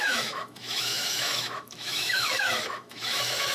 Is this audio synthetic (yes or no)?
yes